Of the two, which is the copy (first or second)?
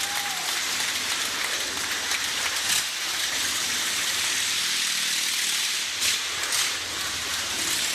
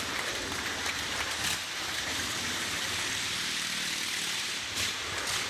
second